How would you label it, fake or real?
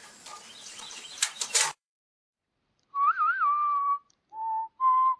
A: fake